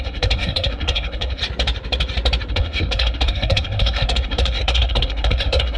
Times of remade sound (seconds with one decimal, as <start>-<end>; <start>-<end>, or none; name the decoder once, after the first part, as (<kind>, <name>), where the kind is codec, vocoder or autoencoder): 0.0-1.4 (codec, SNAC); 2.5-5.8